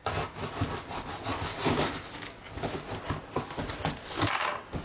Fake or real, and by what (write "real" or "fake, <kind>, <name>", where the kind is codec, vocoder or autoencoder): real